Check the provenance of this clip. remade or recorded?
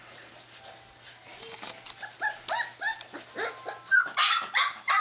recorded